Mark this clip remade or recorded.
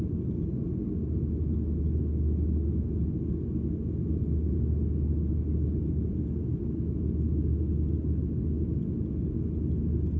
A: recorded